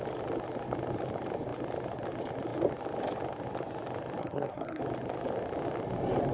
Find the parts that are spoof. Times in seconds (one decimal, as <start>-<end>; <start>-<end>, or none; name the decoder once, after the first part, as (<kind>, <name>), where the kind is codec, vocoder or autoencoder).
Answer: 4.2-4.8 (codec, SNAC)